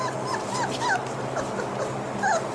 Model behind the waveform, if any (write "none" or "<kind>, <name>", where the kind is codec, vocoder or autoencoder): none